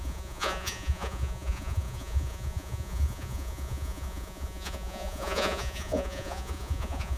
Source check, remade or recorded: remade